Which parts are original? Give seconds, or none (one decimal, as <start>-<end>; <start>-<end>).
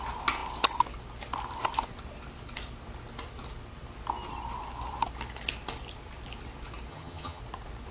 0.0-6.9; 7.4-7.9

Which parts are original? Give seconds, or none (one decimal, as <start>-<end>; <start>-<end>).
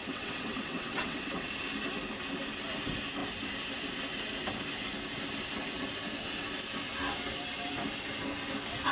1.5-8.9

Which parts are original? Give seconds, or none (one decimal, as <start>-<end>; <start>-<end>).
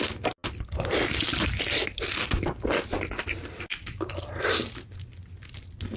0.0-3.7; 4.2-6.0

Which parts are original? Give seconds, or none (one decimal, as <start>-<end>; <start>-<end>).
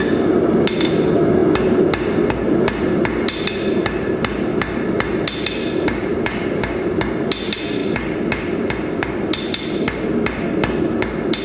0.0-11.4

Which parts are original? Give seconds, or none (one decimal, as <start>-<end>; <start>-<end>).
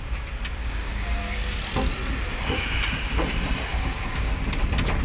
0.0-0.6; 1.6-3.7; 4.3-5.0